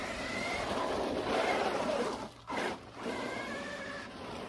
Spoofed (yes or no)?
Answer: no